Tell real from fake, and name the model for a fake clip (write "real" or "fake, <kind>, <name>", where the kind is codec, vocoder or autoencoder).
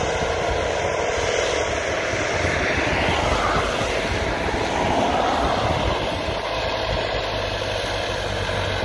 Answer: real